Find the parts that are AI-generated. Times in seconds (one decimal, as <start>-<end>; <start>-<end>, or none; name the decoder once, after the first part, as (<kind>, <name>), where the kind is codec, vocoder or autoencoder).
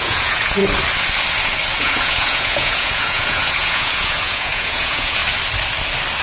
0.0-0.6 (vocoder, Vocos); 1.8-5.2